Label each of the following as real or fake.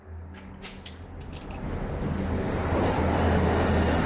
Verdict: real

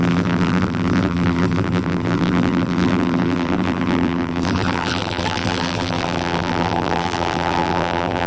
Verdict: fake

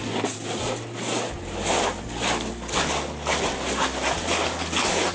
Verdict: real